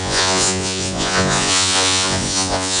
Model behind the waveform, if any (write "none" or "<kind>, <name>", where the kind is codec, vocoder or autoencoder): vocoder, Vocos